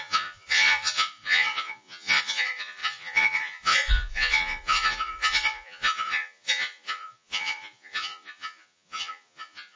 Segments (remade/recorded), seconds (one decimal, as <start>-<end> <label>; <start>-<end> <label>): 0.0-9.8 remade